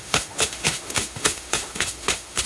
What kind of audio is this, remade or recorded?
remade